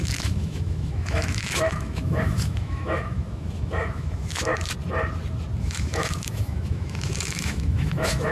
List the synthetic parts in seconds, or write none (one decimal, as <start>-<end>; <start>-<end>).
0.0-4.5; 5.6-8.3